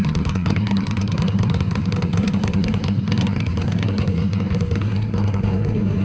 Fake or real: fake